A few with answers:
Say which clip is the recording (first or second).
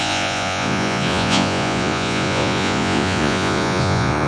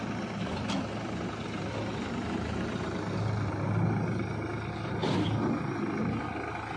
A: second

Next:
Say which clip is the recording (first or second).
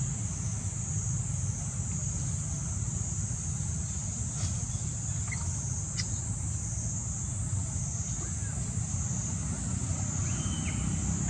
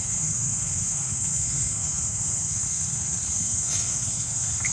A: first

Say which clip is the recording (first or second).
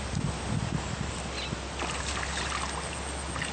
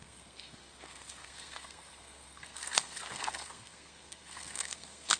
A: first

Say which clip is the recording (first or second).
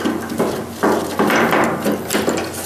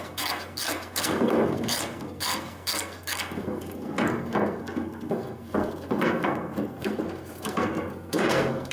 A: first